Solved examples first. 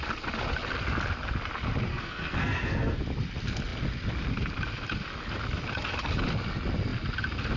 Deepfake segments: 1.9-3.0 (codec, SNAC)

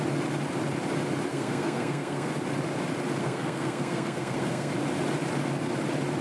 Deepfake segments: 1.3-2.3 (codec, SNAC); 3.2-4.7

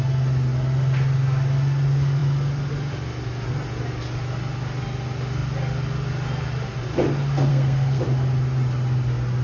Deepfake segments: 7.5-8.0 (codec, SNAC)

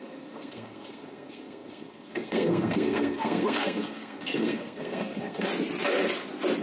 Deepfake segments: 0.0-5.5 (codec, SNAC)

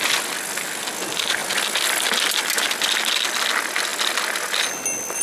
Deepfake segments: none

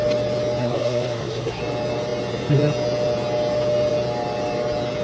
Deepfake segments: 0.6-1.6 (codec, SNAC)

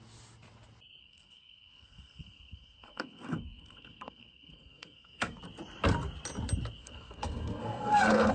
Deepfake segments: 1.0-5.4 (codec, SNAC); 6.8-8.3

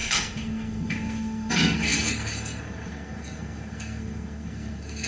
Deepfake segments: 0.0-5.1 (codec, SNAC)